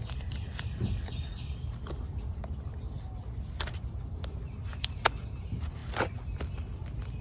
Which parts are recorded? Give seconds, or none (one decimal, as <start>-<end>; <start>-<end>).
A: 0.0-7.2